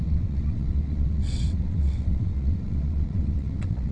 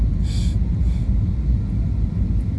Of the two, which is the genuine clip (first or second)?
second